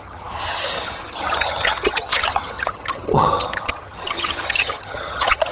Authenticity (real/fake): fake